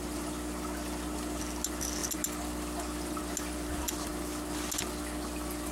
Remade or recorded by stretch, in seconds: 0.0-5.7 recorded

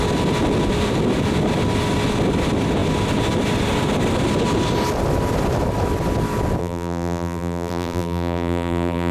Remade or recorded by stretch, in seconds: 0.0-6.6 recorded; 6.6-9.1 remade

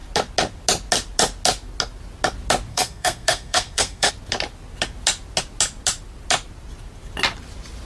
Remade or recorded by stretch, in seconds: 0.0-2.7 recorded; 2.7-4.1 remade; 4.1-7.8 recorded

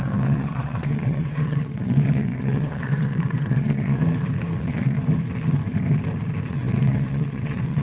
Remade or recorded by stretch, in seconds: 0.0-4.0 remade; 4.0-4.6 recorded; 4.6-5.0 remade; 5.0-6.5 recorded; 6.5-7.8 remade

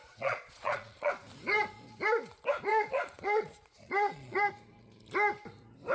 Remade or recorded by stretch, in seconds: 0.0-1.1 remade; 1.1-2.7 recorded; 2.7-4.5 remade; 4.5-5.9 recorded

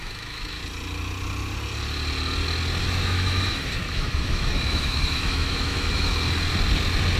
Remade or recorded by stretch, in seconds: 0.0-0.6 remade; 0.6-2.8 recorded; 2.8-6.1 remade; 6.1-7.2 recorded

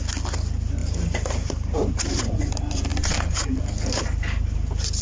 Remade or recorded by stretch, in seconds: 0.0-0.8 recorded; 0.8-2.2 remade; 2.2-5.0 recorded